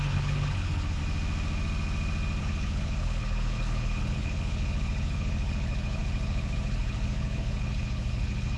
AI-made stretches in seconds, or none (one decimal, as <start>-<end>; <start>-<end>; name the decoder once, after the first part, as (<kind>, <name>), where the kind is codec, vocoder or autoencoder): 0.0-1.0 (codec, HILCodec); 2.4-8.6